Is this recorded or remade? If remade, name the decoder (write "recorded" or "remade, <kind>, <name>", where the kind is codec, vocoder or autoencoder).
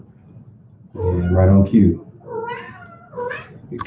recorded